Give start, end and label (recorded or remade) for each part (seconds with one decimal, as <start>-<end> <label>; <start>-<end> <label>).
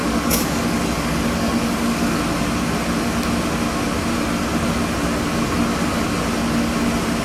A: 0.0-2.2 remade; 2.2-7.2 recorded